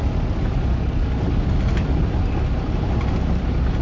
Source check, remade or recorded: recorded